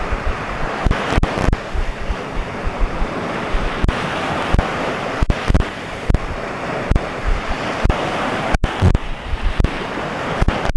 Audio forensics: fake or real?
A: fake